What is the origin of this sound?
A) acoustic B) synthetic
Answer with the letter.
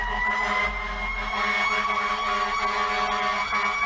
A